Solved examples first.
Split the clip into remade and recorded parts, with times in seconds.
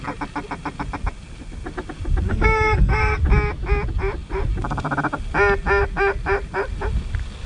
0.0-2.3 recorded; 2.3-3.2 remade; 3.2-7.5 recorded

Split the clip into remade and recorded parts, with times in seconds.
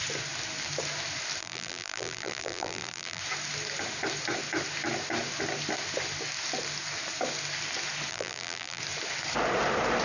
0.0-1.4 recorded; 1.4-3.2 remade; 3.2-8.1 recorded; 8.1-8.8 remade; 8.8-10.0 recorded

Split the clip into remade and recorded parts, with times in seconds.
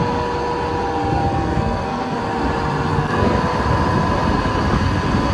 0.0-1.2 recorded; 1.2-2.2 remade; 2.2-2.9 recorded; 2.9-3.4 remade; 3.4-5.3 recorded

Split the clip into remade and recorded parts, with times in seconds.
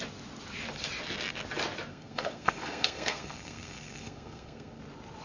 0.0-1.9 recorded; 1.9-4.8 remade; 4.8-5.2 recorded